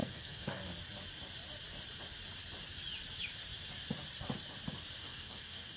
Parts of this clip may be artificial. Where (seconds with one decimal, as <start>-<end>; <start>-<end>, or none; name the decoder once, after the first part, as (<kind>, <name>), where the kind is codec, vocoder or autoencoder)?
0.0-0.6 (codec, SNAC); 5.0-5.8